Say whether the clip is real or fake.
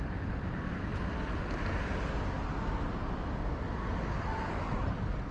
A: real